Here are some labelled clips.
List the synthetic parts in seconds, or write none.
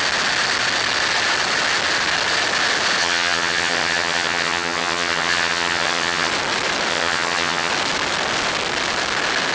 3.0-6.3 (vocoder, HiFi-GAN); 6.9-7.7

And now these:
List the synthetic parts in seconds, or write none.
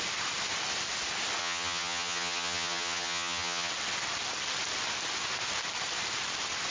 1.4-3.7 (vocoder, HiFi-GAN)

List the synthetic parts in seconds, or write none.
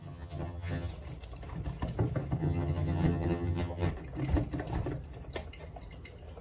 0.0-0.9 (vocoder, HiFi-GAN); 2.4-3.9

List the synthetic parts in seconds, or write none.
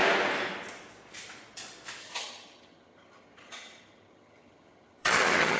2.0-5.6 (vocoder, HiFi-GAN)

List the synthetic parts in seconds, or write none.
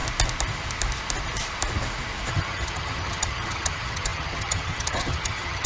2.3-5.7 (vocoder, HiFi-GAN)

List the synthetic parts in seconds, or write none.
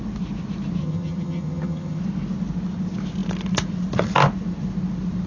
0.8-2.0 (vocoder, HiFi-GAN)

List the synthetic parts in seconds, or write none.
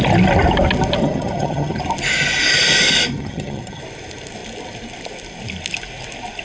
1.0-1.8 (vocoder, HiFi-GAN); 3.1-3.8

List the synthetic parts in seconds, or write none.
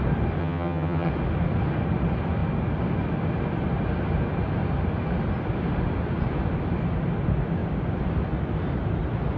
0.4-1.1 (vocoder, HiFi-GAN)